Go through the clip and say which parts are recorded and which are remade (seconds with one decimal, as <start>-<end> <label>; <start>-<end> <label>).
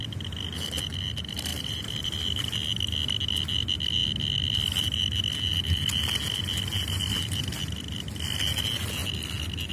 0.0-1.5 recorded; 1.5-2.5 remade; 2.5-9.7 recorded